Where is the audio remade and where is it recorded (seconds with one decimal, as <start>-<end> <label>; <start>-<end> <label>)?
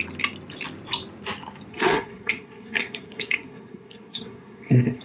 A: 0.0-1.7 recorded; 1.7-5.0 remade